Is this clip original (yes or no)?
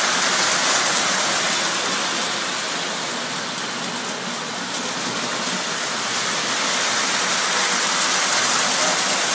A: yes